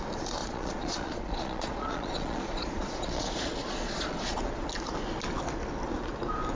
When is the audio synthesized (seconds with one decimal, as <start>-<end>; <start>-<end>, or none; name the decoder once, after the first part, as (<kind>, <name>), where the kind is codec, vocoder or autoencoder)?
0.4-4.4 (vocoder, Vocos)